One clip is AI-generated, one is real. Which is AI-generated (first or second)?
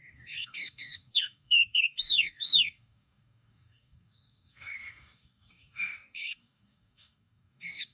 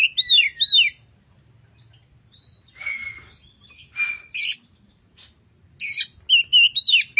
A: first